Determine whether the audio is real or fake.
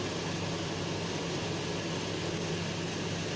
real